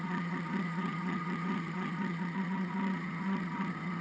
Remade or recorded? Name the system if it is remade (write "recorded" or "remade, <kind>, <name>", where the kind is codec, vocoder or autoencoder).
remade, vocoder, HiFi-GAN